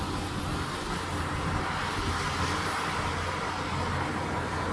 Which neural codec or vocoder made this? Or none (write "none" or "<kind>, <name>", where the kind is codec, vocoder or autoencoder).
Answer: none